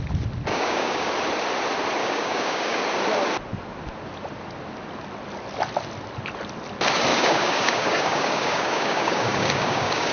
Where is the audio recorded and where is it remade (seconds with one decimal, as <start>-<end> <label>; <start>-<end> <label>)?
0.0-0.5 recorded; 0.5-1.1 remade; 1.1-2.0 recorded; 2.0-2.8 remade; 2.8-7.1 recorded; 7.1-10.1 remade